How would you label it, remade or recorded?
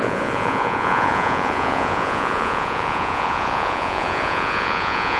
remade